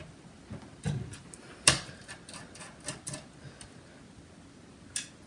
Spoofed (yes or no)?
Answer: no